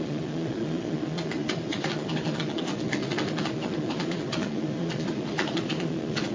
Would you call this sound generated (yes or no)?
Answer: yes